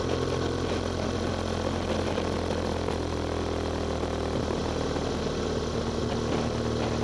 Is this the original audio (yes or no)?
yes